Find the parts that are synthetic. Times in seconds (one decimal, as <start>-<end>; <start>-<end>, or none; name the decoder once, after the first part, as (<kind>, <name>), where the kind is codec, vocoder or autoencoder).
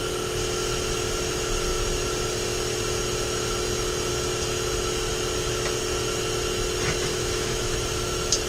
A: 7.1-7.6 (autoencoder, DAC-VAE)